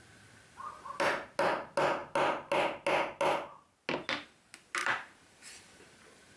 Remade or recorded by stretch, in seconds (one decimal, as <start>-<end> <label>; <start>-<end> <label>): 0.0-4.8 recorded; 4.8-6.4 remade